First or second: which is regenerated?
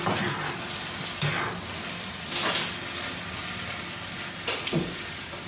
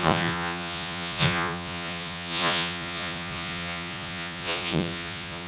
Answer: second